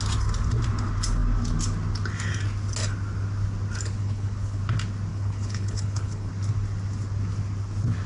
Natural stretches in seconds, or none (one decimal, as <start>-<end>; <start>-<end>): 0.0-4.0; 4.6-5.1; 6.3-8.1